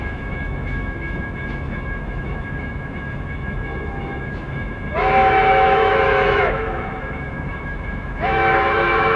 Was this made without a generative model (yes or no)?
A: no